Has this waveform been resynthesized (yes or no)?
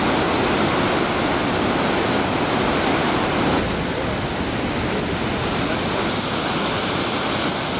no